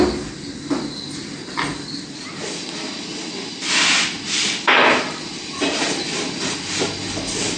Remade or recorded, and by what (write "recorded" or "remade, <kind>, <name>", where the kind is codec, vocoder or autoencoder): recorded